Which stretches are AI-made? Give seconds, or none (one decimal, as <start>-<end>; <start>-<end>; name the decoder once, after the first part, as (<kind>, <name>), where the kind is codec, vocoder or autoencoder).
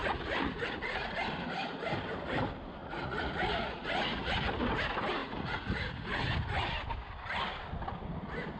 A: 0.0-1.1 (vocoder, Vocos); 2.8-4.5; 5.2-6.2